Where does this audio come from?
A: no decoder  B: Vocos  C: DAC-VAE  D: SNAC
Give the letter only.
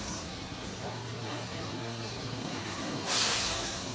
D